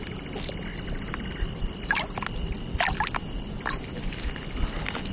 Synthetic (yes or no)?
no